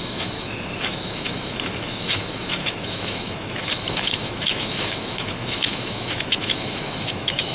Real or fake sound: fake